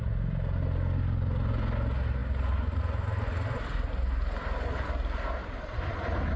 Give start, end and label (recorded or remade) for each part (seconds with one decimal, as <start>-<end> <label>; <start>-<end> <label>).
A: 0.0-6.4 recorded